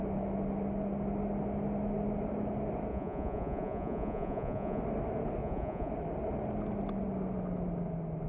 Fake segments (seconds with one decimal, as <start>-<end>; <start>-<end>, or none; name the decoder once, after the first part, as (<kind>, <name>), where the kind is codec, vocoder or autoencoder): 2.9-4.8 (vocoder, Vocos); 5.4-5.9